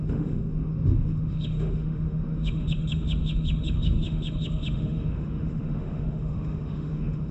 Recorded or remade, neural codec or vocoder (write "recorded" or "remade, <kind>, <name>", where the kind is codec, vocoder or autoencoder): remade, autoencoder, DAC-VAE